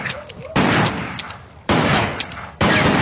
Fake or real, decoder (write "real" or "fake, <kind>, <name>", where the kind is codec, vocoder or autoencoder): real